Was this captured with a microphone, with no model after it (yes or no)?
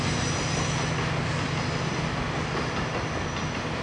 yes